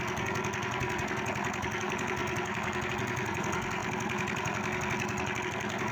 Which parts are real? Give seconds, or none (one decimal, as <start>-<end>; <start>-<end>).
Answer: none